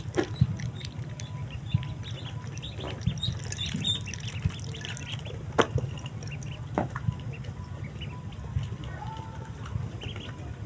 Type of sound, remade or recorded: recorded